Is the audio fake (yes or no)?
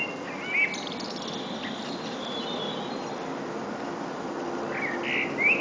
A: no